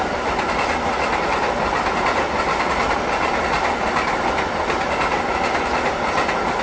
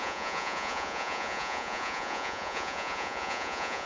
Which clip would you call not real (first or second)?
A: second